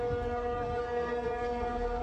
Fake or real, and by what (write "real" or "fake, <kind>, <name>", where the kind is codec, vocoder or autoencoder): fake, codec, SNAC